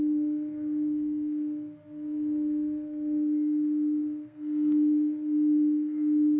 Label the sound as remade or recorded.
remade